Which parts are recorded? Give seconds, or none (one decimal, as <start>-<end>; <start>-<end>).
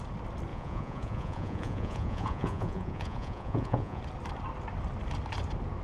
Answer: 0.0-0.5; 4.0-5.8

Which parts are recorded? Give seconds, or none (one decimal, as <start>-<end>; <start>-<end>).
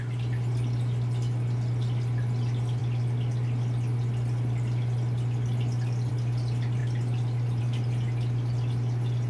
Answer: 0.0-9.3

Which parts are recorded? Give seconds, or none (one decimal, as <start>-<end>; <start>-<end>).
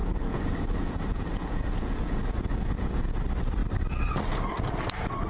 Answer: 3.2-5.3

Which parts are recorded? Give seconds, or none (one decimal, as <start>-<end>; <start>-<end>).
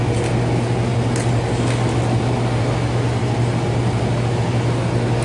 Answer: 0.0-5.2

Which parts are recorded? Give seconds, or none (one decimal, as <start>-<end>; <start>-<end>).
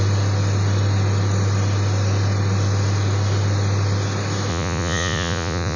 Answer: 0.0-4.5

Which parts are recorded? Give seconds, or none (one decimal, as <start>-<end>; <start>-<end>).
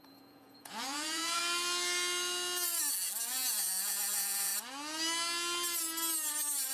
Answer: 1.4-3.3; 4.5-6.7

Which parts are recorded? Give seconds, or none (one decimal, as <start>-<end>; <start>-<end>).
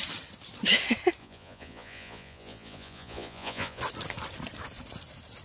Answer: 0.0-1.2; 3.8-5.4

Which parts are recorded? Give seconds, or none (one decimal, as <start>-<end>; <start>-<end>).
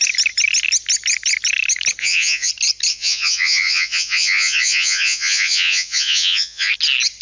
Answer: 0.0-2.0; 2.5-2.9; 6.7-7.2